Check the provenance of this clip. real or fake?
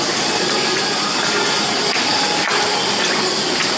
real